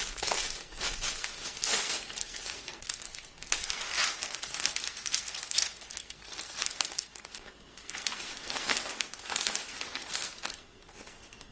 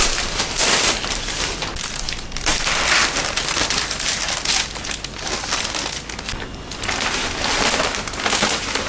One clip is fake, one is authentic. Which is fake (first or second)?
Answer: first